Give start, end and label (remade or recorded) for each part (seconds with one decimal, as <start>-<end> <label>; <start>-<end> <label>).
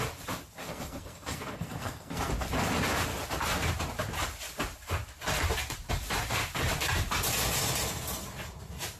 0.0-0.6 recorded; 0.6-2.3 remade; 2.3-9.0 recorded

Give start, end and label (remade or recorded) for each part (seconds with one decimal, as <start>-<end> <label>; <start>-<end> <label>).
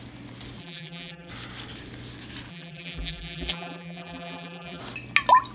0.0-0.6 recorded; 0.6-1.3 remade; 1.3-2.5 recorded; 2.5-4.8 remade; 4.8-5.5 recorded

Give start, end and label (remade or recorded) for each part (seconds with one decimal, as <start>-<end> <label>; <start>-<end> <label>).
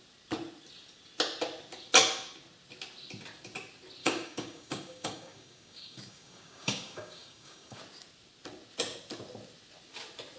0.0-4.0 recorded; 4.0-7.8 remade; 7.8-10.4 recorded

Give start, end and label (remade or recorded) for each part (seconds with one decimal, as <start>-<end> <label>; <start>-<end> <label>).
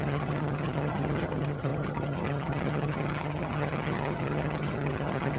0.0-5.4 remade